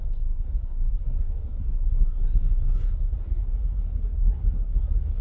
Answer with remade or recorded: remade